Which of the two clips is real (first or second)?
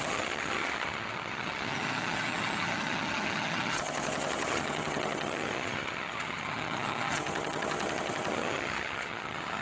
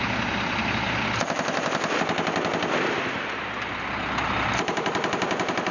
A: second